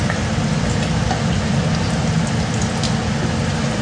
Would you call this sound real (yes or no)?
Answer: yes